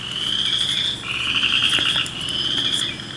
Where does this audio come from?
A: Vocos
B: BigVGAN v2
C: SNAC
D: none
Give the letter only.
D